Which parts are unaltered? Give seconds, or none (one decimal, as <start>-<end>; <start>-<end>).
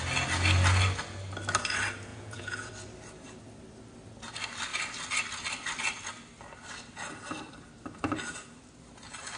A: 0.0-2.1; 2.7-9.4